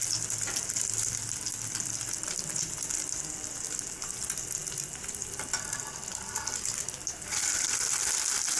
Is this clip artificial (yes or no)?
no